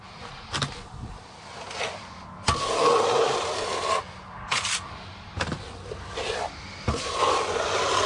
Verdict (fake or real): real